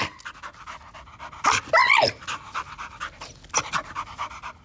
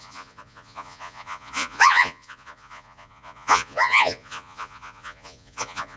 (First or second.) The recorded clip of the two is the first